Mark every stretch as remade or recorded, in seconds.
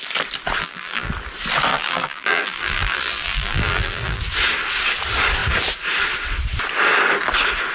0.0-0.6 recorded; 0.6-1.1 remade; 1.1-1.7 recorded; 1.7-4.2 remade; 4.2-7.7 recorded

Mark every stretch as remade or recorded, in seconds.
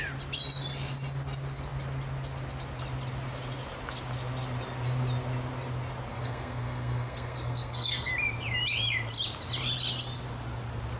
0.0-6.1 recorded; 6.1-8.1 remade; 8.1-11.0 recorded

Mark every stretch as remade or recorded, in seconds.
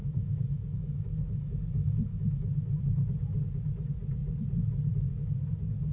0.0-2.8 remade; 2.8-5.9 recorded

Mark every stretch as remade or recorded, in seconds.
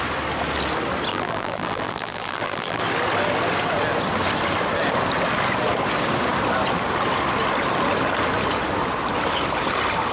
0.0-1.1 recorded; 1.1-2.8 remade; 2.8-10.1 recorded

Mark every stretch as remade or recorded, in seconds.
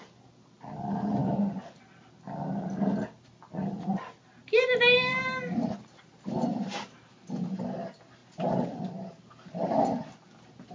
0.0-5.1 recorded; 5.1-7.1 remade; 7.1-10.7 recorded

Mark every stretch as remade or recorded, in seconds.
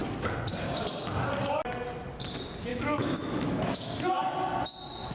0.0-2.7 recorded; 2.7-4.2 remade; 4.2-5.1 recorded